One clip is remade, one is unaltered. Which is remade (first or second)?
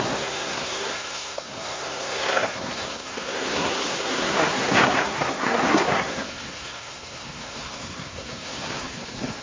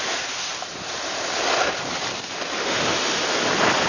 first